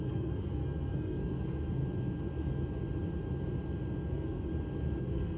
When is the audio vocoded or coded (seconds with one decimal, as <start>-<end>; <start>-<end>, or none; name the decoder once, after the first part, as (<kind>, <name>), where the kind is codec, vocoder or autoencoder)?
0.0-1.8 (codec, SNAC); 4.1-4.5; 5.0-5.4